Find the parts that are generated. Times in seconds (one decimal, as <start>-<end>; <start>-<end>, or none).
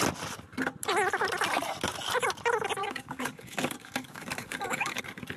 2.8-5.0